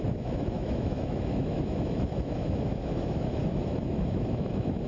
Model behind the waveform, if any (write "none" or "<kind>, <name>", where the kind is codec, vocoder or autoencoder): autoencoder, DAC-VAE